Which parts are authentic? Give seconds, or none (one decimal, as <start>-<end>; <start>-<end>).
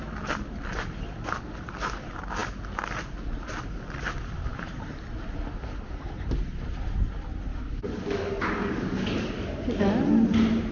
0.0-7.5; 9.8-10.7